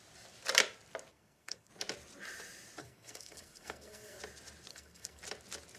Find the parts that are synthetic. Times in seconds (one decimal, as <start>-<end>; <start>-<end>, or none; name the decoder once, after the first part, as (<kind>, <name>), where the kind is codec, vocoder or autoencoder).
1.1-1.7 (codec, SNAC); 2.8-4.2; 4.7-5.2